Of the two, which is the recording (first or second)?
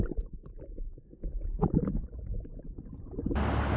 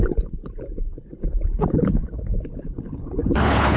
first